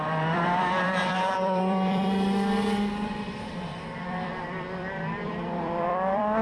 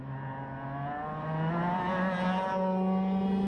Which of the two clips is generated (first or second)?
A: first